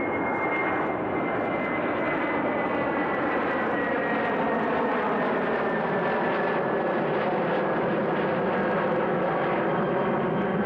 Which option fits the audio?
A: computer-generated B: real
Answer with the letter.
B